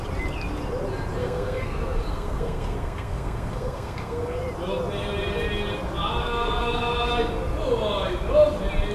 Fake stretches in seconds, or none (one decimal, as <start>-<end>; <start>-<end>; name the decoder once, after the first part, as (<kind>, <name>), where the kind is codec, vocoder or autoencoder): 1.2-4.4 (codec, SNAC); 6.2-7.1